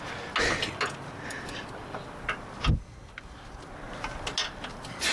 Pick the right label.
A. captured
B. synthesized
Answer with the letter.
A